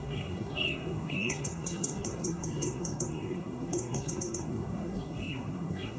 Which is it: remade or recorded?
remade